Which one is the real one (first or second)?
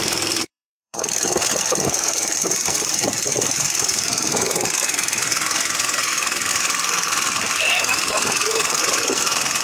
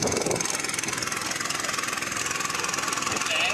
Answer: second